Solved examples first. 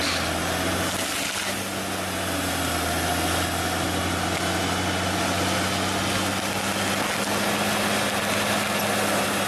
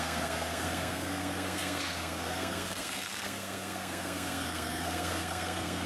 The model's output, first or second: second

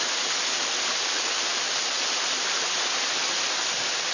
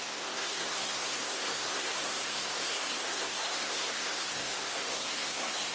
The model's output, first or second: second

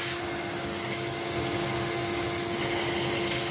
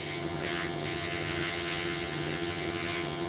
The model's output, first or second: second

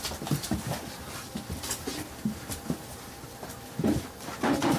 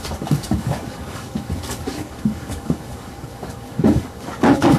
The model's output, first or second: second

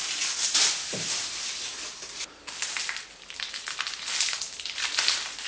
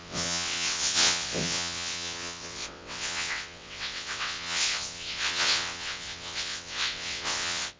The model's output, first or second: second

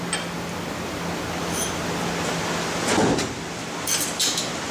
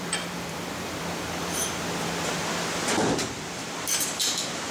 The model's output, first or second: second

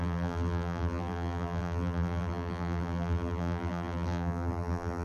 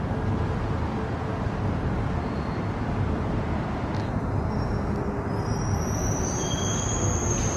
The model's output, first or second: first